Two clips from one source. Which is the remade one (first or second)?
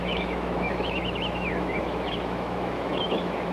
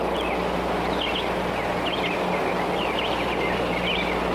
first